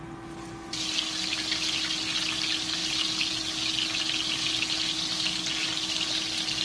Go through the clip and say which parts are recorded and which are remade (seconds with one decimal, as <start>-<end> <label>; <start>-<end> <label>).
0.0-6.6 recorded